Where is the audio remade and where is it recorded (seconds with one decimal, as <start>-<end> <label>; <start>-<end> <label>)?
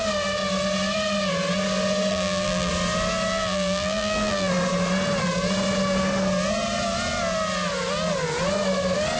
0.0-2.1 recorded; 2.1-2.7 remade; 2.7-3.3 recorded; 3.3-4.5 remade; 4.5-9.2 recorded